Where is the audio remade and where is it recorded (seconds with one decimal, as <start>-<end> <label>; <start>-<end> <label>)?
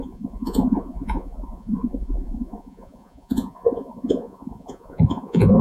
0.0-5.6 remade